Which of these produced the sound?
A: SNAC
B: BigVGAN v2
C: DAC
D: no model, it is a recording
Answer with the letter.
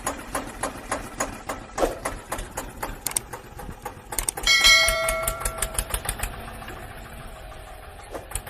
B